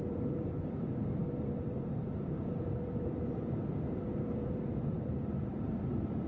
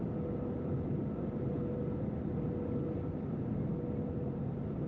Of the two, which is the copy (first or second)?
first